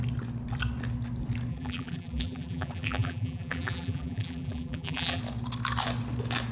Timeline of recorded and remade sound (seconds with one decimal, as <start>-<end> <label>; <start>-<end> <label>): 0.0-1.5 recorded; 1.5-5.2 remade; 5.2-6.5 recorded